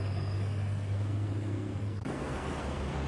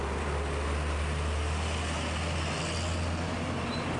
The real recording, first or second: second